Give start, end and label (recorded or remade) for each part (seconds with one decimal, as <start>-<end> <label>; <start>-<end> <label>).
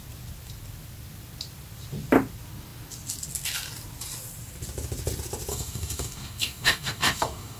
0.0-5.5 recorded; 5.5-7.6 remade